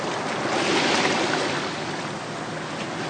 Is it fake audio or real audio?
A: real